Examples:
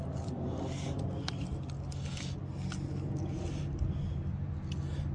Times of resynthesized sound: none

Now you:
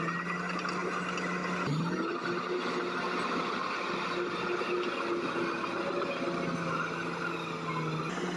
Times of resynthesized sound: none

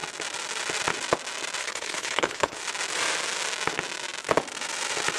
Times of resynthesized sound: 1.6-2.6 (codec, HILCodec)